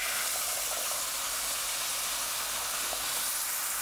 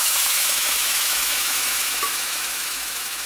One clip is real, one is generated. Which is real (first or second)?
first